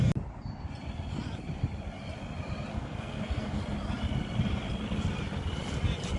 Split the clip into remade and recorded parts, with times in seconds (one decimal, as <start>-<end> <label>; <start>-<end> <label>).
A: 0.0-2.7 recorded; 2.7-3.6 remade; 3.6-6.2 recorded